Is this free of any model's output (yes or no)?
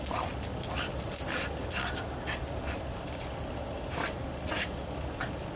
yes